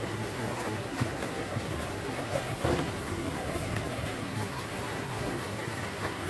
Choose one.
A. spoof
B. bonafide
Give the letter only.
A